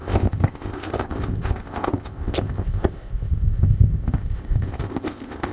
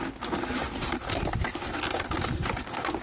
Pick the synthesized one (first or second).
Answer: first